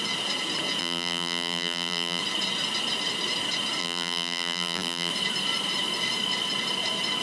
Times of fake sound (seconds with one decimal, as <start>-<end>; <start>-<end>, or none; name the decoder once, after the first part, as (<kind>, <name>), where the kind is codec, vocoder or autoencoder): 0.8-2.2 (vocoder, BigVGAN v2); 3.8-5.1